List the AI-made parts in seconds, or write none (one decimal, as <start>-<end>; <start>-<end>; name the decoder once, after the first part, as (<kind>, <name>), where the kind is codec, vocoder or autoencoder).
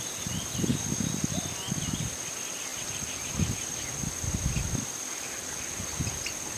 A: none